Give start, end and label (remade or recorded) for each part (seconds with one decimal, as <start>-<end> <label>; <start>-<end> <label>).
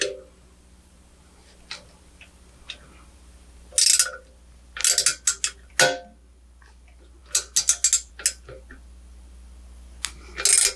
0.0-10.8 recorded